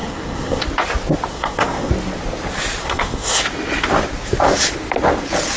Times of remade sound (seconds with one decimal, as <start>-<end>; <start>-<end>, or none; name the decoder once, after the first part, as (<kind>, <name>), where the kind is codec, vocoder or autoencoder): 0.0-0.6 (codec, SNAC); 1.3-1.9; 2.8-3.4